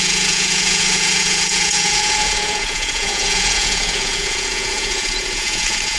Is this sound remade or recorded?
remade